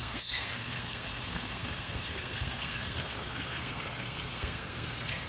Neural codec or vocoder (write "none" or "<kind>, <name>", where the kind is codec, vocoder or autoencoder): codec, SNAC